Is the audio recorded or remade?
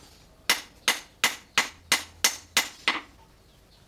recorded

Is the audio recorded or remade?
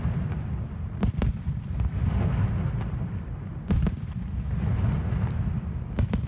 recorded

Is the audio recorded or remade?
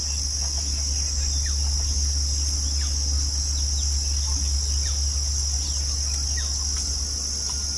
recorded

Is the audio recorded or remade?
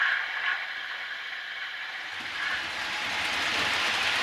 recorded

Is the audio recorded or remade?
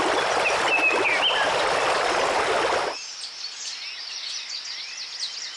recorded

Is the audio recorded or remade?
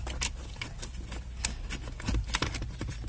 recorded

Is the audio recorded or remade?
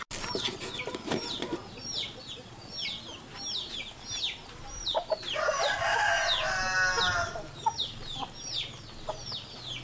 recorded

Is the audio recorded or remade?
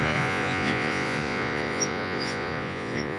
remade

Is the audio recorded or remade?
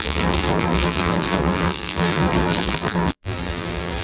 remade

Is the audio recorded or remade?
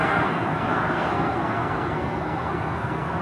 remade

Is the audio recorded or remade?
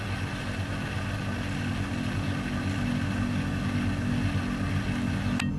recorded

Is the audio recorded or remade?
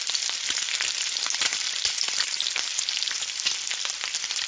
recorded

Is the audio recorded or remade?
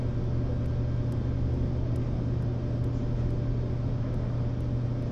recorded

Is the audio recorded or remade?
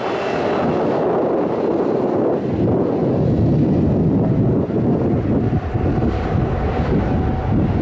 recorded